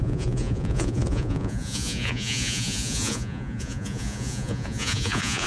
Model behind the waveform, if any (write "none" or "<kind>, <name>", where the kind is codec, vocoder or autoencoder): vocoder, Vocos